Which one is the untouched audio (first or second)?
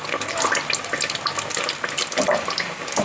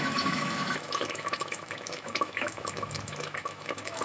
first